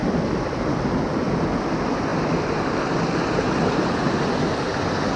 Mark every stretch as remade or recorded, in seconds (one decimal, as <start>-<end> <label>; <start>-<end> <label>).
0.0-1.0 remade; 1.0-5.2 recorded